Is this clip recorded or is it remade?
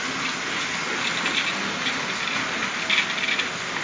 recorded